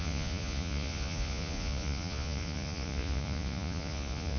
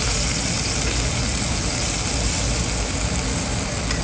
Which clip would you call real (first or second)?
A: second